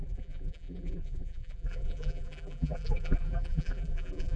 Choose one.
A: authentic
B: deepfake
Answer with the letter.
B